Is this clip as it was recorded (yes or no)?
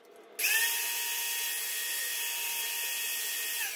yes